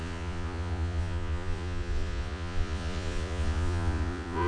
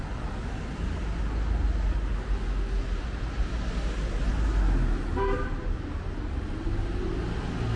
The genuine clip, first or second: second